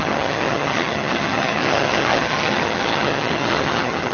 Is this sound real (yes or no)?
no